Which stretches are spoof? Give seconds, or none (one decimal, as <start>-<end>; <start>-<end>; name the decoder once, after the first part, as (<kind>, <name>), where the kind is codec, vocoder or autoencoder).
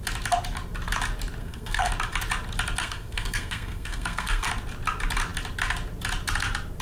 1.4-1.9 (codec, SNAC); 2.8-4.5